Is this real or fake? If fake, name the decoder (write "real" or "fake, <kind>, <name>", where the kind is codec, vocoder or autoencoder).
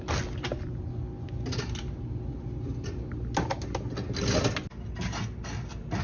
real